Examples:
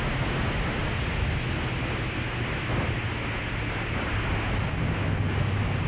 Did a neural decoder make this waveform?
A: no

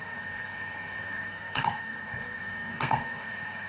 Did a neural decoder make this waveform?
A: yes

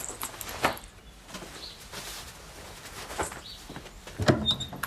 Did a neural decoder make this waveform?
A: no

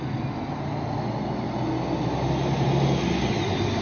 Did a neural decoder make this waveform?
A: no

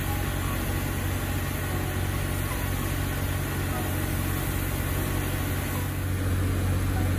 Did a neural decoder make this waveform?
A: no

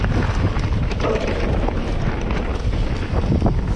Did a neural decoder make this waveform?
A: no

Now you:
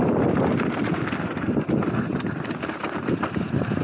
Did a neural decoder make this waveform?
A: no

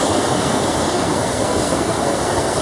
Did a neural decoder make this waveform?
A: yes